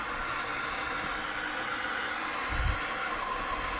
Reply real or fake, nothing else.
real